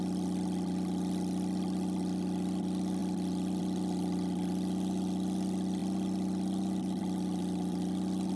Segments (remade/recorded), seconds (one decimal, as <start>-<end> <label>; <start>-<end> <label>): 0.0-8.4 recorded